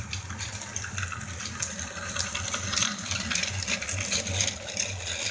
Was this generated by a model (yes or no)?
no